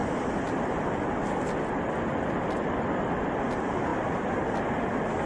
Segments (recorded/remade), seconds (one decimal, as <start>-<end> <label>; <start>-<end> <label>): 0.0-5.3 recorded